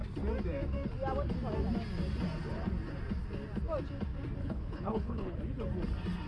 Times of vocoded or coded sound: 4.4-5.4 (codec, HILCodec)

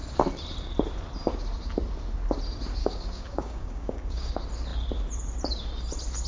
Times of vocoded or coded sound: 2.8-4.3 (codec, DAC)

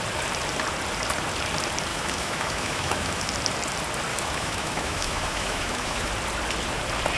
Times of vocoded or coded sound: 1.9-3.3 (autoencoder, DAC-VAE); 4.1-6.1

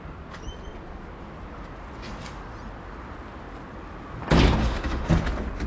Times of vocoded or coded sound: 4.6-5.1 (autoencoder, DAC-VAE)

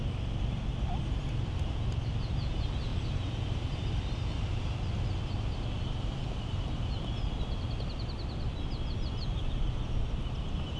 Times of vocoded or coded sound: none